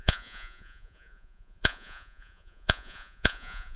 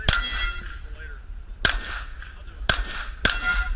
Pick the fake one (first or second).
first